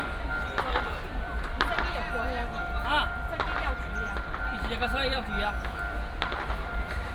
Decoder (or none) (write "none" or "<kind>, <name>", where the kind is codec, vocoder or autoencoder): vocoder, BigVGAN v2